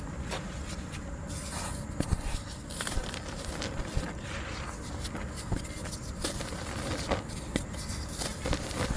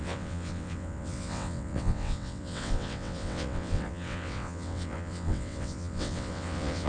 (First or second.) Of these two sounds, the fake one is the second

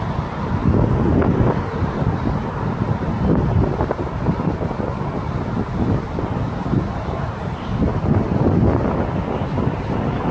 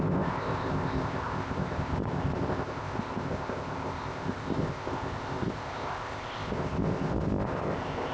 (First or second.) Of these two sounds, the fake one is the second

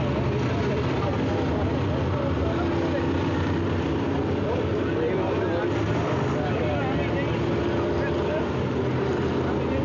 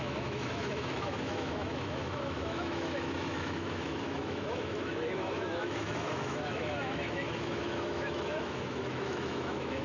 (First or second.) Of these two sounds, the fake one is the second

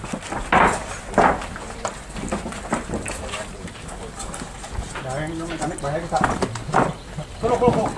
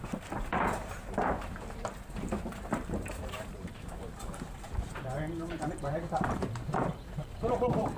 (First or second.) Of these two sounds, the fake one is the second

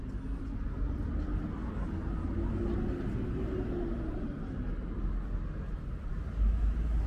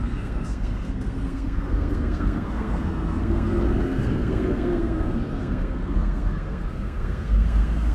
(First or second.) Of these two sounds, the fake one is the second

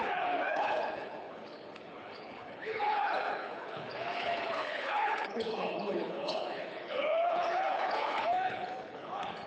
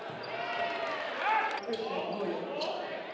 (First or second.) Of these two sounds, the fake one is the first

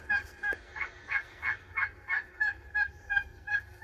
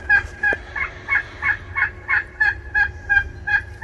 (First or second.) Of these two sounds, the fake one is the first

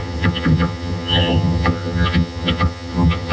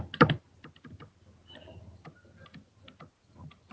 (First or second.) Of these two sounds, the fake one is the first